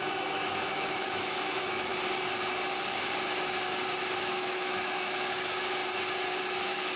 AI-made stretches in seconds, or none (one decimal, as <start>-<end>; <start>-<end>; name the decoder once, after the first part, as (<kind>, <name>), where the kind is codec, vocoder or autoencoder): 0.0-1.9 (autoencoder, DAC-VAE); 4.2-5.8; 6.4-7.0